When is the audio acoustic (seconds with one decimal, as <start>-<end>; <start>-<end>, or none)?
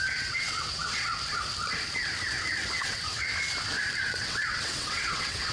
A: 1.1-2.7; 3.3-4.0